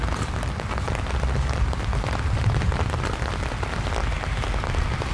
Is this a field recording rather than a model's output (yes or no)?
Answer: yes